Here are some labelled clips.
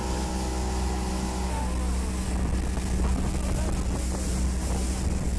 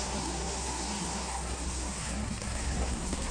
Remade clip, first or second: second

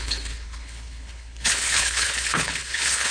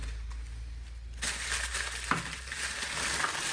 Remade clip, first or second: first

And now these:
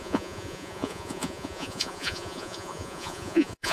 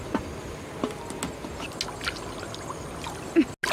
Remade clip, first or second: first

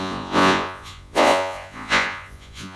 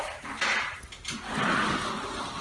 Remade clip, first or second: first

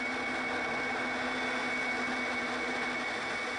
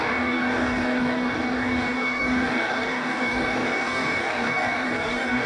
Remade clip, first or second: second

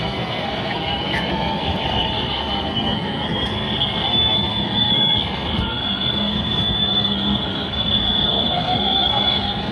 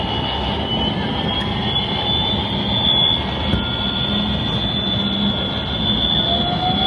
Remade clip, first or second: first